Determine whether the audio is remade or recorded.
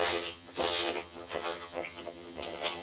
remade